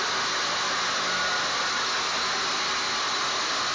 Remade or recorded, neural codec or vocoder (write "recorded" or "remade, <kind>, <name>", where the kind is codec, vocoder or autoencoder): recorded